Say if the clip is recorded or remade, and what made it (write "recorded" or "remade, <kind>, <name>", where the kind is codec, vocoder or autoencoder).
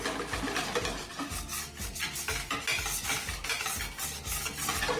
recorded